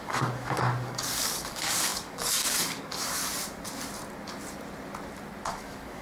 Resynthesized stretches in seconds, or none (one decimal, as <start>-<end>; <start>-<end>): 0.0-3.2; 5.5-6.0